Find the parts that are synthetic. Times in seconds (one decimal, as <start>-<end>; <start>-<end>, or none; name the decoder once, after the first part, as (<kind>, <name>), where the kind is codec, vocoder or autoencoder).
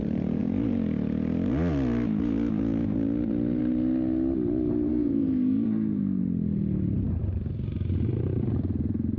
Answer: 4.9-6.2 (codec, SNAC)